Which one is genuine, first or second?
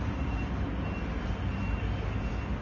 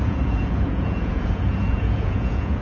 first